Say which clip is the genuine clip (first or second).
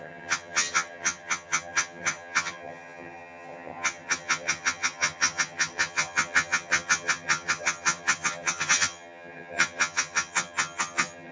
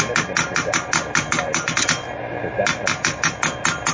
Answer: second